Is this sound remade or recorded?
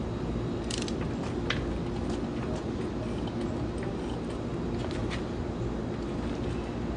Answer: recorded